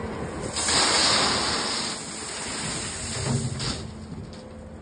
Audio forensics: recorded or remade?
recorded